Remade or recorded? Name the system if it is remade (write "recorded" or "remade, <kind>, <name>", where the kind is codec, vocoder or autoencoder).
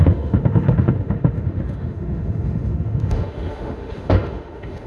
remade, autoencoder, DAC-VAE